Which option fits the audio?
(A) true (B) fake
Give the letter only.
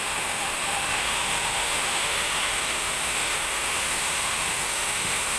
B